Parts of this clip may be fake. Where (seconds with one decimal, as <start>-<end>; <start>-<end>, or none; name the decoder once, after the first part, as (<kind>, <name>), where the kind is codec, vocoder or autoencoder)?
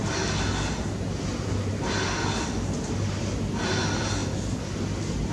none